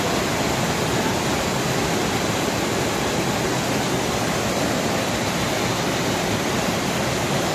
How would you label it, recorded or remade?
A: recorded